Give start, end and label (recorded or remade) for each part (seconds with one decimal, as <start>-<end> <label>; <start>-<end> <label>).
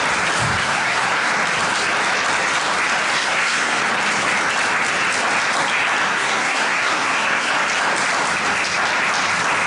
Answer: 0.0-0.6 recorded; 0.6-1.3 remade; 1.3-3.1 recorded; 3.1-3.8 remade; 3.8-6.1 recorded; 6.1-7.5 remade; 7.5-9.7 recorded